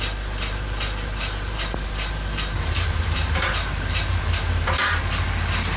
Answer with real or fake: fake